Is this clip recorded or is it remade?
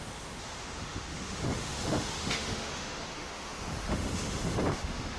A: remade